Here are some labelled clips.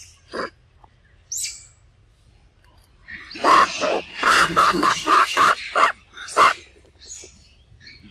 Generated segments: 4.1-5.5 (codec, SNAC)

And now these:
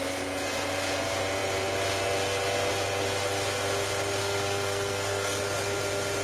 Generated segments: 4.2-5.4 (codec, SNAC)

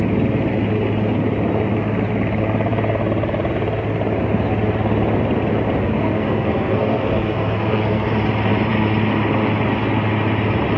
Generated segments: 5.8-8.1 (codec, SNAC)

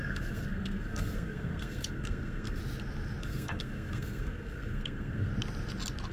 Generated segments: 0.0-2.6 (codec, SNAC); 3.2-5.3

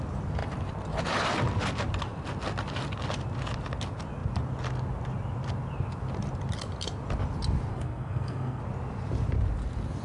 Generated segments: 7.7-8.6 (codec, SNAC)